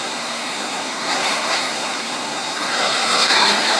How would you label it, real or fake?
fake